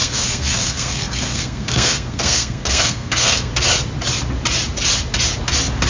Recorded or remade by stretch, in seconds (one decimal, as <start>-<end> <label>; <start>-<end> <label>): 0.0-3.5 remade; 3.5-5.9 recorded